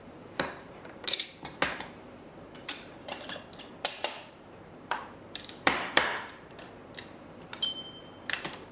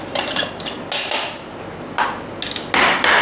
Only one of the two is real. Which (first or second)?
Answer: second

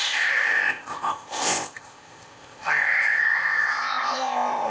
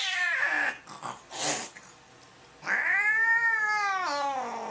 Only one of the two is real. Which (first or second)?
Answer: second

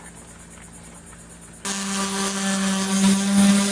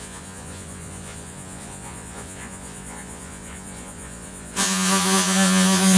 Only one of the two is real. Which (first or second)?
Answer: first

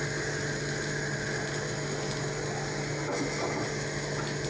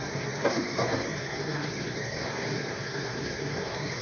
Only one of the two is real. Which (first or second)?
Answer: first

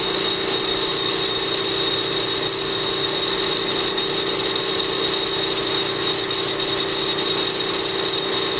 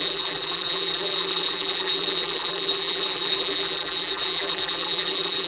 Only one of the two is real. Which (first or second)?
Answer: first